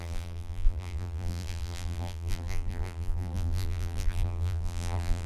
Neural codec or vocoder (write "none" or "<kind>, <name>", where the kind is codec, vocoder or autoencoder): vocoder, BigVGAN v2